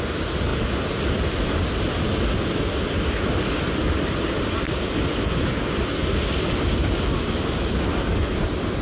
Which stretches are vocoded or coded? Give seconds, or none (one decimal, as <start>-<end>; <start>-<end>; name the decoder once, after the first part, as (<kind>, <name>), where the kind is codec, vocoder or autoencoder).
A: none

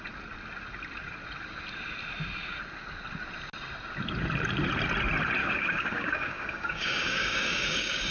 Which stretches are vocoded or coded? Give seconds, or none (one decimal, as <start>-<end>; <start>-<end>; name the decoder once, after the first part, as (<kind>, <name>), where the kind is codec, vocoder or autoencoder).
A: 5.4-8.1 (codec, DAC)

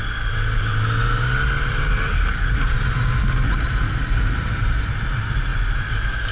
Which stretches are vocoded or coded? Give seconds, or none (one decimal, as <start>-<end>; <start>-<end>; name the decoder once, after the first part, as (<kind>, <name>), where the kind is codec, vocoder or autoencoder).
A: none

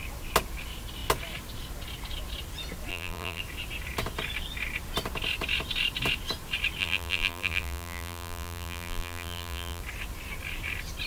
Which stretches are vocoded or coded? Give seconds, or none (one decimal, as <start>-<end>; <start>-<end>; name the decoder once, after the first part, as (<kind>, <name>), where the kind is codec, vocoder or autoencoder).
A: 2.9-3.4 (vocoder, BigVGAN v2); 6.8-9.8

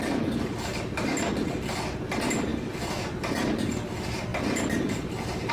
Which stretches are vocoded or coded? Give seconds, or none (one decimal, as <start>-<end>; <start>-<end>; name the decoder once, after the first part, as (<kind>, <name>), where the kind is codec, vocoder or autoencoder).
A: 0.7-1.7 (vocoder, BigVGAN v2); 2.5-3.5